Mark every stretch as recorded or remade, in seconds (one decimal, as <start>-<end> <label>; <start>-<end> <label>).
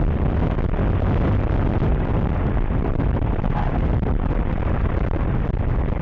0.0-1.9 recorded; 1.9-5.5 remade; 5.5-6.0 recorded